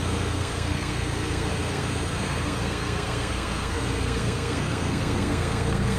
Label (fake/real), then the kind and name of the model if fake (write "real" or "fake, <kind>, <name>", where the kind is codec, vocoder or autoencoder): fake, codec, SNAC